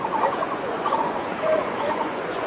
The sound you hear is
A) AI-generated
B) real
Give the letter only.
A